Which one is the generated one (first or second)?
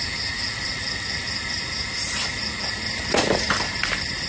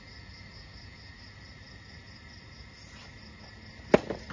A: first